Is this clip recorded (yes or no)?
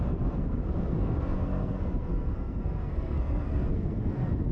no